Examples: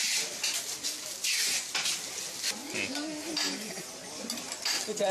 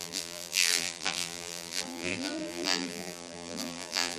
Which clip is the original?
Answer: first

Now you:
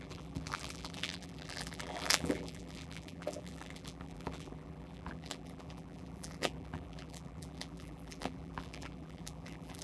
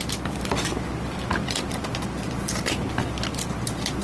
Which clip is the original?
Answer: second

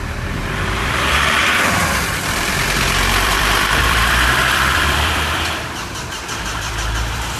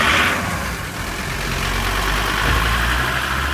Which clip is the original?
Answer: second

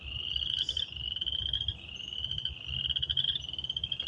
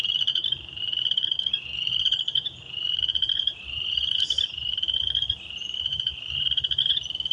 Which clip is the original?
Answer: first